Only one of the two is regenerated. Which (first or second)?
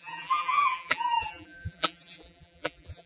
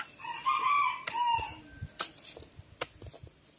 first